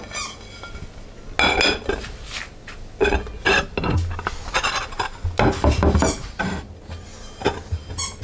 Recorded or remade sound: recorded